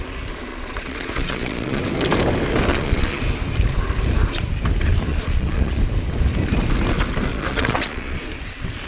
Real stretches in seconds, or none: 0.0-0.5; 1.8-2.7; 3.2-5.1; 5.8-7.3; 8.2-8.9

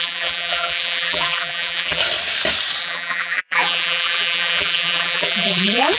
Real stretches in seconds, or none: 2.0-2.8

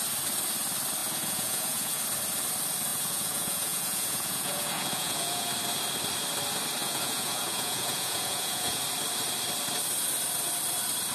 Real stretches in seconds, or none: 0.0-1.0; 2.0-2.9; 5.5-6.8; 8.8-11.1